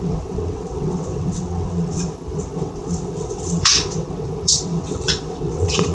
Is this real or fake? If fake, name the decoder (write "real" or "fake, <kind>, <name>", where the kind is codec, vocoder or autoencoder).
fake, vocoder, WaveNeXt